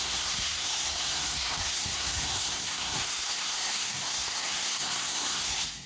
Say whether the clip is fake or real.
fake